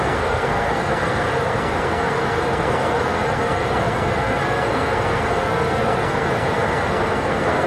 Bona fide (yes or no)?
no